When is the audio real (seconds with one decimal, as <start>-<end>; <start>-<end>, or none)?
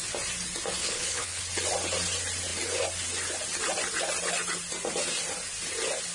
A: 0.0-0.8; 1.4-6.1